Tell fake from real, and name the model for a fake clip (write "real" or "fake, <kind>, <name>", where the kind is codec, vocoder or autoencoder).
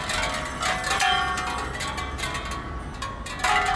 real